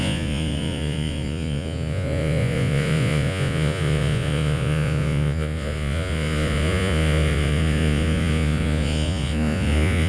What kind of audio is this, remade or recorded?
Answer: remade